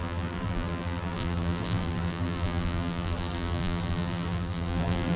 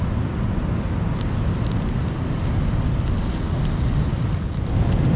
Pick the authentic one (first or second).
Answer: second